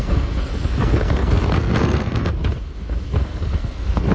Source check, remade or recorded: remade